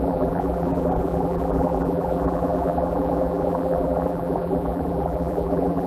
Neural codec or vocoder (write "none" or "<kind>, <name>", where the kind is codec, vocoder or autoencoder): vocoder, BigVGAN v2